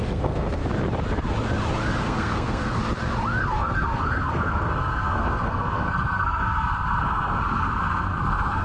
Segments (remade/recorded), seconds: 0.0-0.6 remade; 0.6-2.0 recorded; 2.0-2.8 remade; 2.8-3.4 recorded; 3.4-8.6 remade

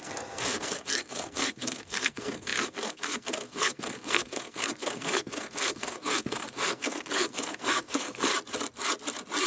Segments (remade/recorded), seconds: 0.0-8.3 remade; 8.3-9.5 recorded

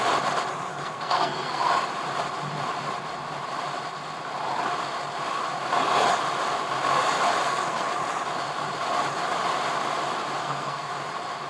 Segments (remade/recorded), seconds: 0.0-0.7 recorded; 0.7-1.7 remade; 1.7-7.4 recorded; 7.4-8.0 remade; 8.0-10.4 recorded; 10.4-10.9 remade; 10.9-11.5 recorded